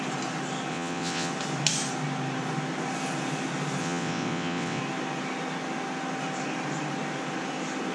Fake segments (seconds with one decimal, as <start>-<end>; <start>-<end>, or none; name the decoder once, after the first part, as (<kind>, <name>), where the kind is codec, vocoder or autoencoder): 0.7-1.3 (vocoder, WaveNeXt); 3.8-4.8